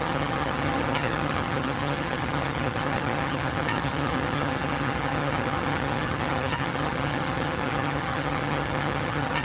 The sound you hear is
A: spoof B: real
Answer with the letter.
A